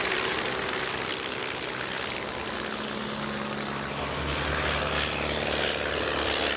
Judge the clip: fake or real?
real